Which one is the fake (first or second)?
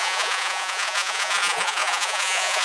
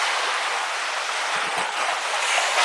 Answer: first